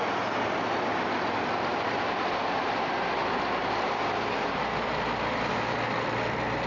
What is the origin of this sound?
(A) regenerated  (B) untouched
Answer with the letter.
B